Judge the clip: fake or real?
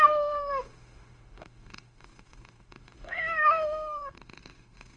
fake